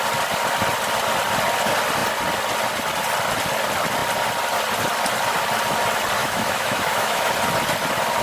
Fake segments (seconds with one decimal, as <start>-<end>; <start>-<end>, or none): 6.2-7.3